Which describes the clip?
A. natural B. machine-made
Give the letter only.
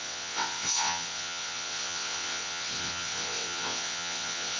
B